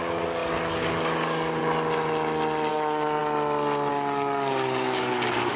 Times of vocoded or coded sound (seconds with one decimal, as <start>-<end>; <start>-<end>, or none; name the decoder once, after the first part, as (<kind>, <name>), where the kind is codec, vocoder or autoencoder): 0.0-1.6 (codec, DAC); 2.7-3.2; 3.9-5.6

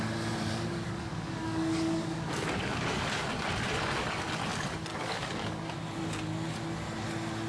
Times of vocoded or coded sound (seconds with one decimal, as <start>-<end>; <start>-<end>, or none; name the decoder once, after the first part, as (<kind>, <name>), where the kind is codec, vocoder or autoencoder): 0.5-3.2 (codec, DAC); 4.9-5.7

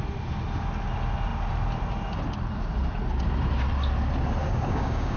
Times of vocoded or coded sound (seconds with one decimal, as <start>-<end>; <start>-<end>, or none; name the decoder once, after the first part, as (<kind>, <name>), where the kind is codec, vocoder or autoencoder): 4.4-5.2 (codec, DAC)

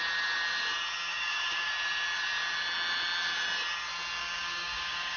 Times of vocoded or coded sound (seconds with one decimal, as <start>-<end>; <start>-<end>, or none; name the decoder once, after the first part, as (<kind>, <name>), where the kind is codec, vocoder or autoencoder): 1.1-1.7 (codec, DAC); 4.2-5.2

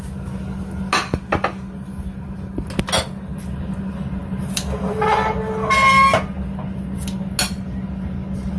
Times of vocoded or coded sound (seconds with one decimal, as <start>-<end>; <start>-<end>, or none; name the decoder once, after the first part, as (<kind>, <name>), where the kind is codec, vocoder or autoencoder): none

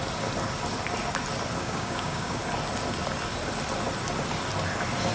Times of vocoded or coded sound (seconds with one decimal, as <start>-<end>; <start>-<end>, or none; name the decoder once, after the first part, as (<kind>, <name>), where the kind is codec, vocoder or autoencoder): 1.6-2.4 (codec, DAC)

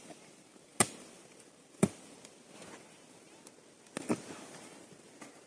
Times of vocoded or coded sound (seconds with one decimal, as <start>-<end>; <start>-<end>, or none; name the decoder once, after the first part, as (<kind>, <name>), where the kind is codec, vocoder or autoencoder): none